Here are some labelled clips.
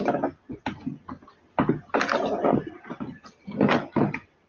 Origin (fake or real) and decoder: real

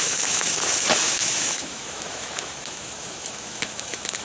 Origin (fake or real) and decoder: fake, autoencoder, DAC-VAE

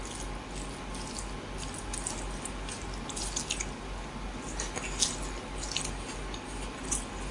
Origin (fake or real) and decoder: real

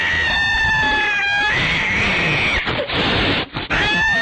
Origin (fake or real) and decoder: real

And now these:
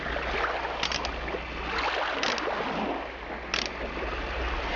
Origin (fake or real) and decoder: real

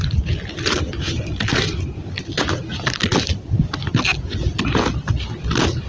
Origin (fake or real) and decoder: real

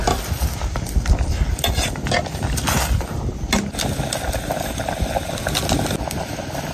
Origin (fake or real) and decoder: real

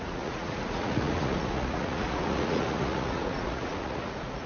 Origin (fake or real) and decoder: fake, vocoder, Vocos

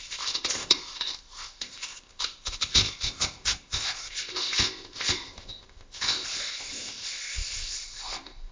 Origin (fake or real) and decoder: fake, codec, ZipCodec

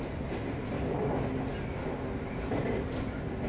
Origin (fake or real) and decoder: real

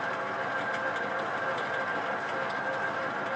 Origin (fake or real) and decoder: fake, vocoder, BigVGAN v2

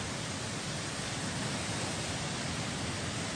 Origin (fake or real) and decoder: real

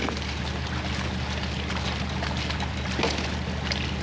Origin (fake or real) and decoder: real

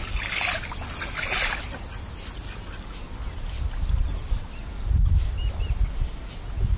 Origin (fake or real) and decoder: real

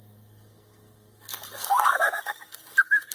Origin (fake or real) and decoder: fake, codec, SNAC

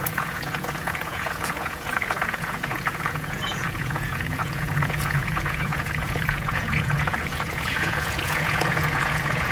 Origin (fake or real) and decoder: fake, vocoder, Vocos